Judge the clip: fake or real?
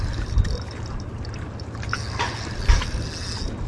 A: real